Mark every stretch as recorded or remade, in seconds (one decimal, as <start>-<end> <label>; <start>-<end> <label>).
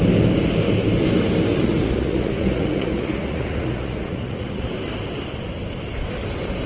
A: 0.0-1.5 recorded; 1.5-4.7 remade; 4.7-6.7 recorded